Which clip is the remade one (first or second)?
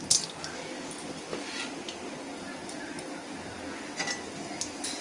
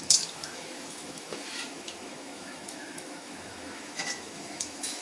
second